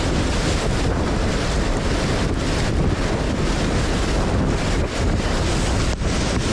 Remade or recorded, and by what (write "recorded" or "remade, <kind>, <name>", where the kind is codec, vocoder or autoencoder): recorded